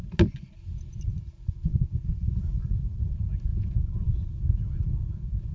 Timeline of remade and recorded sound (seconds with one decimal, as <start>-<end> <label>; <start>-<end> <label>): 0.0-3.5 recorded; 3.5-5.5 remade